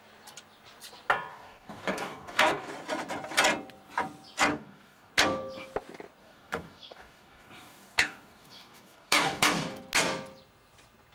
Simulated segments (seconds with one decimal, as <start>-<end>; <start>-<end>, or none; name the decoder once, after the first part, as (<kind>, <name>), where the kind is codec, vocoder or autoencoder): 1.3-2.7 (codec, DAC); 4.5-5.1; 6.2-9.8

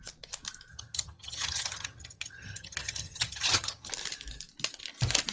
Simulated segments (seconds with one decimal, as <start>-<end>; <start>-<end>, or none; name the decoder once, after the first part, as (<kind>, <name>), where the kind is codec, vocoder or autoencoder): 0.7-3.9 (vocoder, HiFi-GAN)

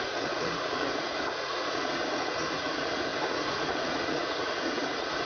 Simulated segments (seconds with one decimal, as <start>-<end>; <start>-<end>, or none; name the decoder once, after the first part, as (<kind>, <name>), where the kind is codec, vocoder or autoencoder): 0.0-5.3 (vocoder, Vocos)

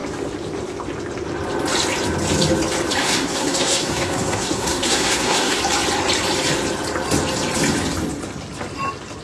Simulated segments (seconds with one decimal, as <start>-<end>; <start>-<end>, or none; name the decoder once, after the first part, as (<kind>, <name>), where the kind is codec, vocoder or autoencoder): 3.0-5.6 (codec, SNAC)

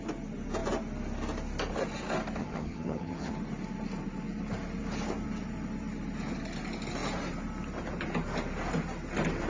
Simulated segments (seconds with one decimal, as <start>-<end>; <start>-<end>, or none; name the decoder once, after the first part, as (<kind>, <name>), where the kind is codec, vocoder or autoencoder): 2.4-3.3 (vocoder, HiFi-GAN)

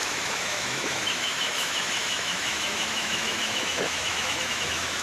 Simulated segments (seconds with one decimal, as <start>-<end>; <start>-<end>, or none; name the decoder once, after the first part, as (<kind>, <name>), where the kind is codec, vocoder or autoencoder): 0.0-5.0 (autoencoder, DAC-VAE)

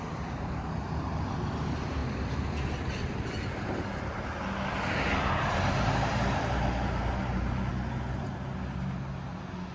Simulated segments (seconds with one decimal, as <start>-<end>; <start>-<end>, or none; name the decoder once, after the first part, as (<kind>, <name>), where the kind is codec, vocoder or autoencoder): 5.5-7.7 (vocoder, BigVGAN v2)

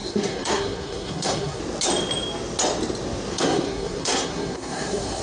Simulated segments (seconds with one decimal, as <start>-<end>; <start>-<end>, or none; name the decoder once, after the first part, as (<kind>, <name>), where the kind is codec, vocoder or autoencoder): 0.0-1.6 (codec, SNAC); 3.3-5.2